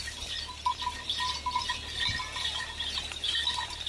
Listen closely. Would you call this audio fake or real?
real